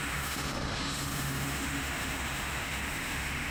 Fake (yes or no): yes